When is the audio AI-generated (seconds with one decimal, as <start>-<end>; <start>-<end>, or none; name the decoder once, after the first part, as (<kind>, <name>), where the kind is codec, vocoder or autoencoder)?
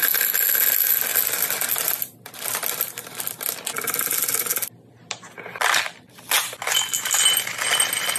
none